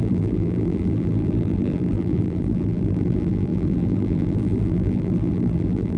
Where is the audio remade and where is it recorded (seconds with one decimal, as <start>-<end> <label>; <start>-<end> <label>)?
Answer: 0.0-6.0 remade